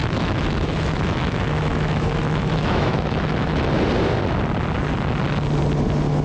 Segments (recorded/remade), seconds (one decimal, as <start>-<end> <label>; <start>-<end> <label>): 0.0-3.7 remade; 3.7-6.2 recorded